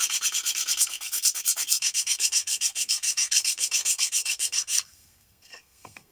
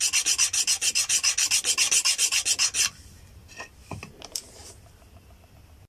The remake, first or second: first